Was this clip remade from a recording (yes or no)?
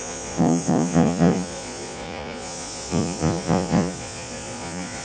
yes